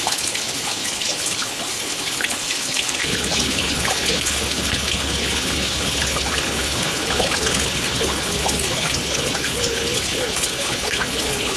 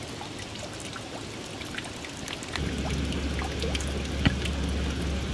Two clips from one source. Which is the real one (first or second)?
second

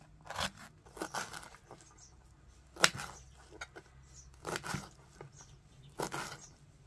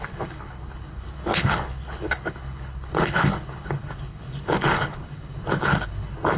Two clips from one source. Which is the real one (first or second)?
first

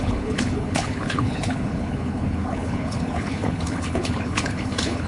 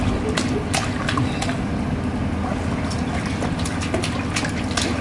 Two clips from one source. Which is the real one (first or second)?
second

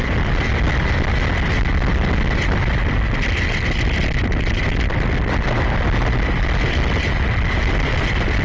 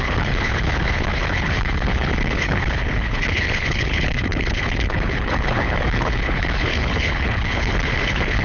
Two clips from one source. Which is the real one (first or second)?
first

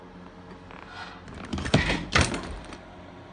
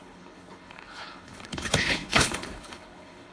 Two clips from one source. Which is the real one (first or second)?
first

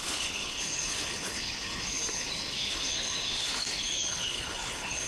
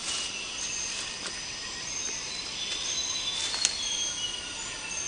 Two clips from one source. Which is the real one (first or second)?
second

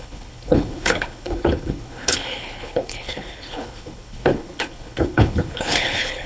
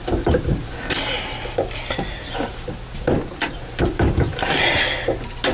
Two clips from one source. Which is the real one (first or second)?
second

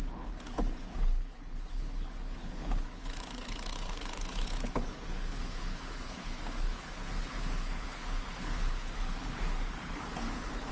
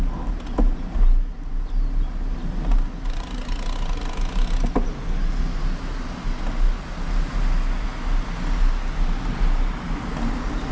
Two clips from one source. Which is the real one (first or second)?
second